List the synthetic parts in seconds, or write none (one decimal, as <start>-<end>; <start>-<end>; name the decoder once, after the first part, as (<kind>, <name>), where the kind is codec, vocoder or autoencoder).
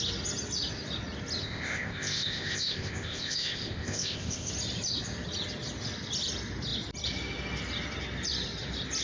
1.4-4.5 (codec, ZipCodec)